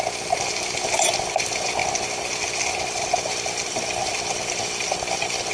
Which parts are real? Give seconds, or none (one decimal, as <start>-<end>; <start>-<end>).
0.0-5.5